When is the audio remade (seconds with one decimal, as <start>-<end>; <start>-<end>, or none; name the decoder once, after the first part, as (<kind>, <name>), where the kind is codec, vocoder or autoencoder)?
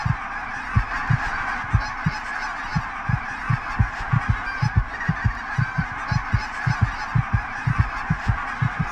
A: none